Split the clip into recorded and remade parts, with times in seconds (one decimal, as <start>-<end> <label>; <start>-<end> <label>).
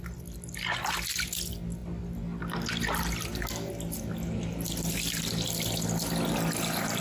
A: 0.0-7.0 recorded